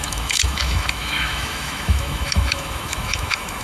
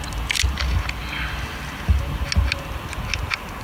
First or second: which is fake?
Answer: first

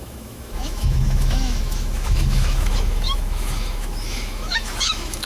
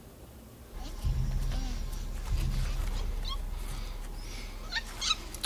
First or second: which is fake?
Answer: first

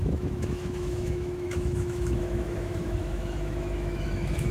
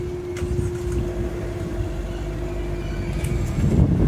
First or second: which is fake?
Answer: first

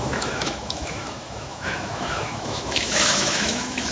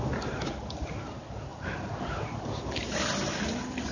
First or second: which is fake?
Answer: first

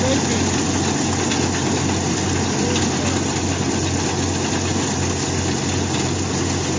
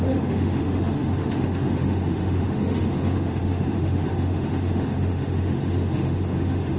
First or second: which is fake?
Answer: second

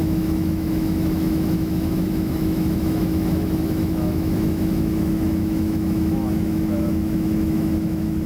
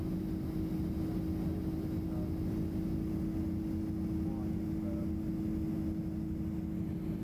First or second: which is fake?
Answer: first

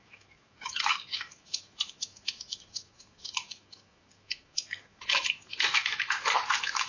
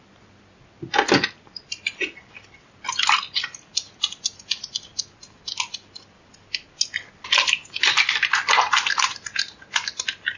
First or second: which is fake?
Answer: first